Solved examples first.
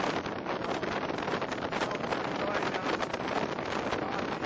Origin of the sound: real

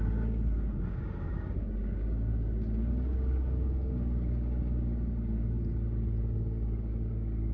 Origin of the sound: fake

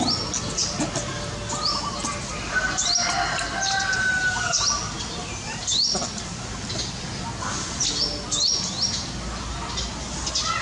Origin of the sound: real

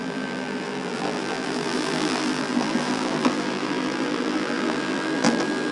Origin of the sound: fake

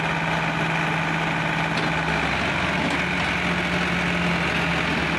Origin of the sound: real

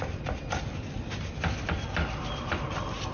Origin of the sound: real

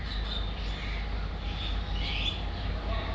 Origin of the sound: real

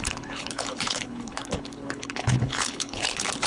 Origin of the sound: fake